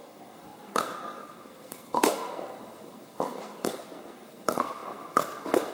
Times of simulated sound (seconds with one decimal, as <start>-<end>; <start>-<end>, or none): 0.0-5.7